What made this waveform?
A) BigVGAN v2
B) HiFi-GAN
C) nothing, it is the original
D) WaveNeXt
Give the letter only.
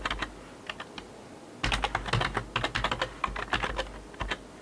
C